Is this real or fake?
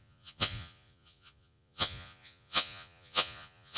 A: fake